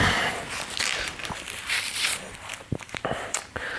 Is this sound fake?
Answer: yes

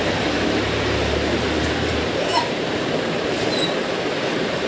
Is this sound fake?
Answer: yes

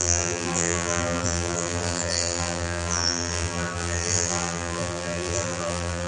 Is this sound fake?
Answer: yes